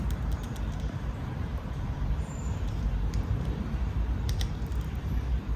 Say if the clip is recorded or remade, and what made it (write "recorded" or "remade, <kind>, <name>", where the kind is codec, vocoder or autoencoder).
remade, vocoder, BigVGAN v2